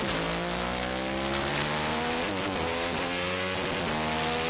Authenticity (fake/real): real